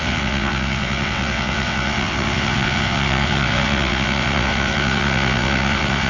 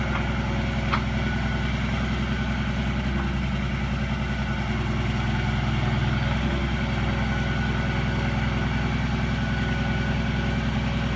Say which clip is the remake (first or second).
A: first